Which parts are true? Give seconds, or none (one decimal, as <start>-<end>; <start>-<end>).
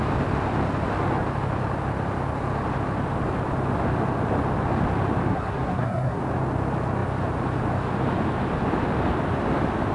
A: 0.0-5.3; 6.2-9.9